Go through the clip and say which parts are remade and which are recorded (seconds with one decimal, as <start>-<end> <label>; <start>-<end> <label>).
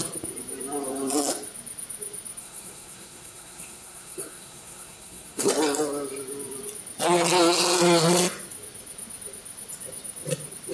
0.0-2.4 recorded; 2.4-5.5 remade; 5.5-10.7 recorded